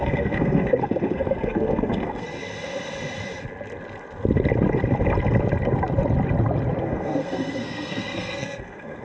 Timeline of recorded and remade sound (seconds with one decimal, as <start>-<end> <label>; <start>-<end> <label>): 0.0-2.3 remade; 2.3-6.8 recorded; 6.8-9.0 remade